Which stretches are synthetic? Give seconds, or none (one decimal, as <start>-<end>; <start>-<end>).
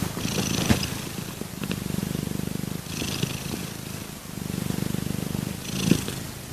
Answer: 2.0-4.1